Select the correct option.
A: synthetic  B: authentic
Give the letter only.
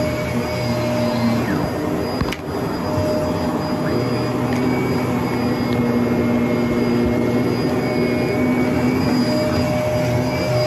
B